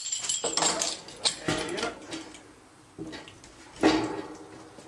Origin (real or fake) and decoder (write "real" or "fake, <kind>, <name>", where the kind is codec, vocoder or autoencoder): real